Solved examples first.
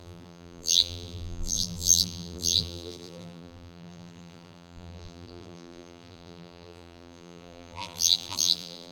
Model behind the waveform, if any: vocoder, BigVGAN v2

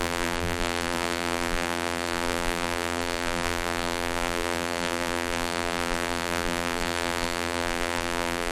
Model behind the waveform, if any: vocoder, BigVGAN v2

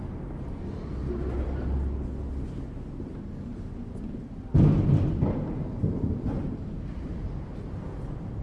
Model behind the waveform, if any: none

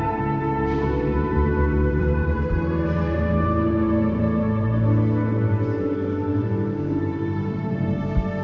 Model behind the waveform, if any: vocoder, BigVGAN v2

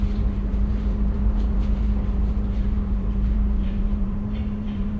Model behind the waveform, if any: vocoder, BigVGAN v2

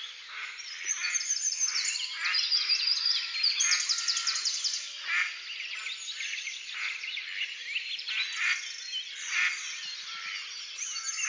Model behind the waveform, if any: none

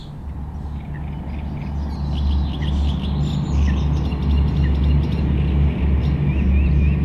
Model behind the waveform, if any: none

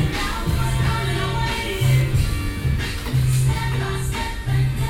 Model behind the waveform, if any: none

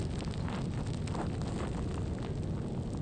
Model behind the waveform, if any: none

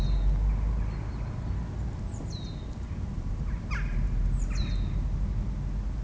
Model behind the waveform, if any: none